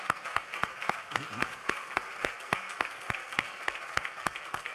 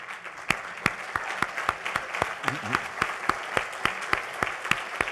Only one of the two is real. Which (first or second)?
second